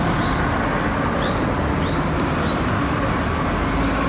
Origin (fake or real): real